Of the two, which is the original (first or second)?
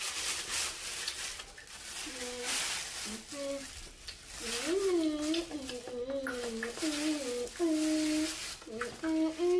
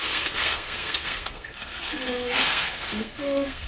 first